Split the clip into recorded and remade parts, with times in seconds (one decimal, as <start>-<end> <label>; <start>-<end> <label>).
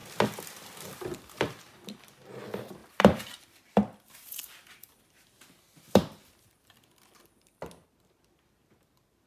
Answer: 0.0-9.3 remade